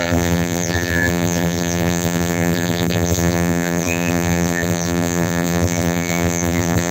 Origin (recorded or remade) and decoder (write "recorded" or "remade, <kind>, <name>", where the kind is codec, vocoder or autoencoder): remade, vocoder, BigVGAN v2